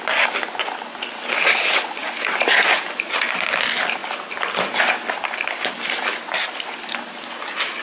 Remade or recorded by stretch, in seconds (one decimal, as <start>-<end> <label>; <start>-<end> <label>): 0.0-2.0 recorded; 2.0-3.4 remade; 3.4-7.8 recorded